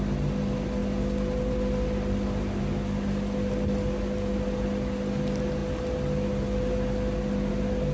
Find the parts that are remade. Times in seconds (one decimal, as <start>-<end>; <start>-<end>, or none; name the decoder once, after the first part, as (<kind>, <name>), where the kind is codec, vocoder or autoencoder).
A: none